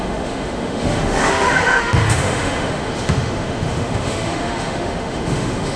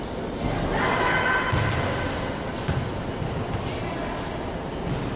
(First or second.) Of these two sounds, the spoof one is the first